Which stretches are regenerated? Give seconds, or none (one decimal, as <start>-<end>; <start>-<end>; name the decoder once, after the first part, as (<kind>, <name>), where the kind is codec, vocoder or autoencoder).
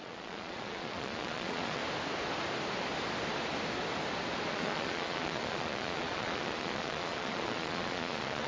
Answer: 0.0-1.8 (vocoder, Vocos); 4.5-8.5